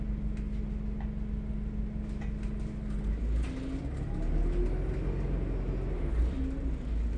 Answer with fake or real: real